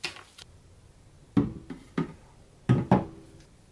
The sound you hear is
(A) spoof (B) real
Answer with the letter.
B